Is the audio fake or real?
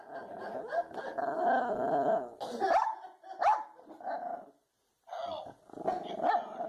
real